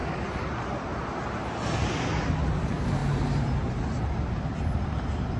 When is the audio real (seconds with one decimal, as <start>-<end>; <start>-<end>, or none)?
0.0-3.0; 4.0-5.4